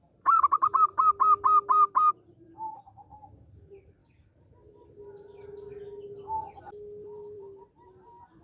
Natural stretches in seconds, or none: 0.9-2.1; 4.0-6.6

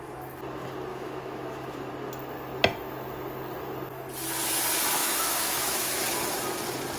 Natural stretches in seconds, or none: 0.0-0.9; 1.9-5.0; 6.0-7.0

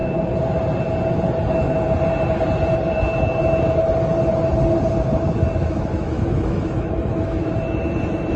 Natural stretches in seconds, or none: 0.0-5.6; 7.5-8.4

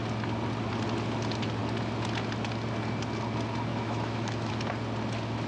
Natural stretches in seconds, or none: 0.0-3.7; 4.5-5.5

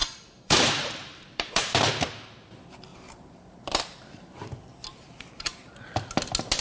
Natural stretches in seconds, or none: 1.9-2.9; 3.8-4.9; 5.7-6.6

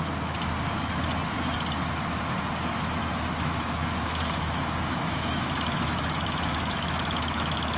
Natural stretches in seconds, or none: 0.0-3.0